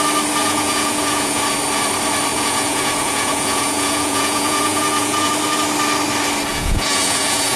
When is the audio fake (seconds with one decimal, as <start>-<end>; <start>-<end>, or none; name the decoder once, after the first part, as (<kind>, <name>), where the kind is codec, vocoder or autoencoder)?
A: 0.4-1.4 (vocoder, Vocos); 2.3-5.3; 6.5-7.6